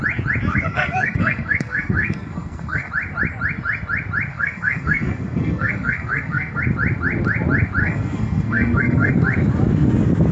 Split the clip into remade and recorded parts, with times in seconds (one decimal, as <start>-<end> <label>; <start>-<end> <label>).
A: 0.0-0.5 recorded; 0.5-2.9 remade; 2.9-4.3 recorded; 4.3-6.6 remade; 6.6-7.8 recorded; 7.8-9.1 remade; 9.1-10.3 recorded